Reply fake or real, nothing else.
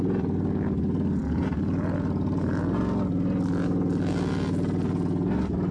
real